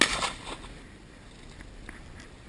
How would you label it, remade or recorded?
recorded